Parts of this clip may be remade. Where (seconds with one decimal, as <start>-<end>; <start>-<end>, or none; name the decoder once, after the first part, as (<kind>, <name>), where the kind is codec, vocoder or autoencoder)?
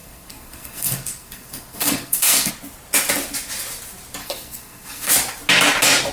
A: 0.0-2.5 (codec, SNAC); 4.2-5.1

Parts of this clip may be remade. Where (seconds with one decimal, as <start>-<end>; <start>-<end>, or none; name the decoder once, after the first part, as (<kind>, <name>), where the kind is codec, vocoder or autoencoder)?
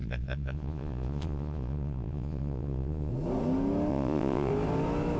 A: 0.0-3.1 (vocoder, Vocos); 3.9-4.5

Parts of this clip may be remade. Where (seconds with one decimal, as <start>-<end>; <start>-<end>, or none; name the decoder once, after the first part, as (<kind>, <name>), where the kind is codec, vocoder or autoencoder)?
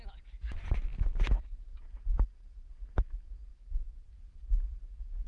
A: 0.0-0.9 (vocoder, BigVGAN v2); 3.0-3.5; 4.1-5.3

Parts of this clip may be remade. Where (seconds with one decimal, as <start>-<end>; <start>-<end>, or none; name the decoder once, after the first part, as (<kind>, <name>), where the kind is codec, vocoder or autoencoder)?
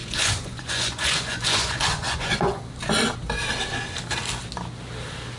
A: 0.0-2.6 (vocoder, Vocos)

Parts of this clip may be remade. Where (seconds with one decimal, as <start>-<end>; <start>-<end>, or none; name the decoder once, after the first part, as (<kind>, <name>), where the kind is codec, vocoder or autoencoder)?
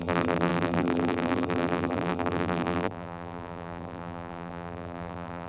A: 0.0-5.5 (vocoder, BigVGAN v2)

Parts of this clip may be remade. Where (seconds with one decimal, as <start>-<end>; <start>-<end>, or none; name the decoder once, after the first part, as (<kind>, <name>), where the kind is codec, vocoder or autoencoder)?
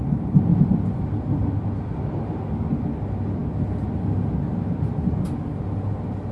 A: none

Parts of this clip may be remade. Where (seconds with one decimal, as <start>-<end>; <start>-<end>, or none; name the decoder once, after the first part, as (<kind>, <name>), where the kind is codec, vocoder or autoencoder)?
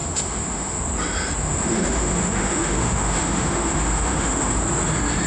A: 0.0-0.8 (autoencoder, DAC-VAE); 1.4-4.6